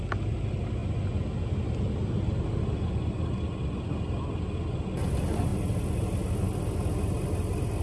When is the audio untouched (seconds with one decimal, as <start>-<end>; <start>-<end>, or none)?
0.0-7.8